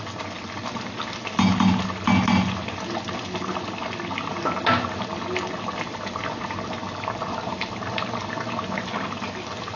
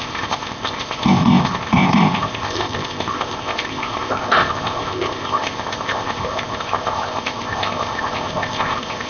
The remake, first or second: second